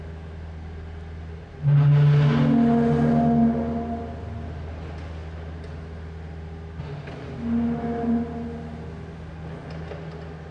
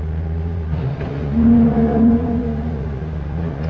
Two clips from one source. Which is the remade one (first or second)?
second